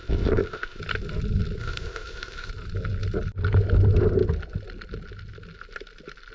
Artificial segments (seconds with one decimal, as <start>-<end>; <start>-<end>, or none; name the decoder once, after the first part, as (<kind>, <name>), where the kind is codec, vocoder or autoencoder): 0.0-0.8 (codec, ZipCodec); 1.6-2.5